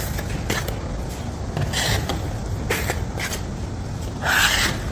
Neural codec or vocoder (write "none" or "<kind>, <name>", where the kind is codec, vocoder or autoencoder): none